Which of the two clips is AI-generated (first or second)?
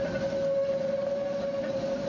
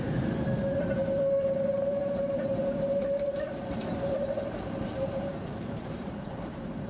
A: second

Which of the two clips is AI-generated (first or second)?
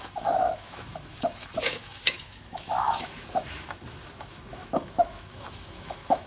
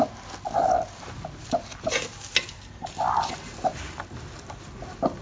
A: first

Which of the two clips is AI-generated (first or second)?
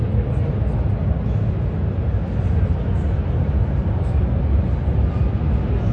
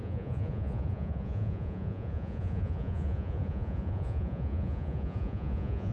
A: second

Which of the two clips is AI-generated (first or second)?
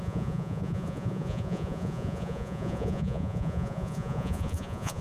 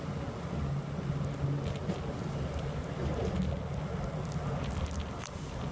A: first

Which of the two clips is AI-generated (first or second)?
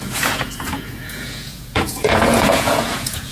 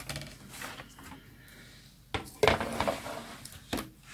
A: first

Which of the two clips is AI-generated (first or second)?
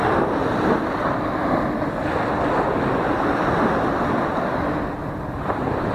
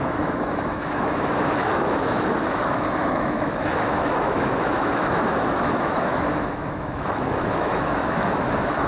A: second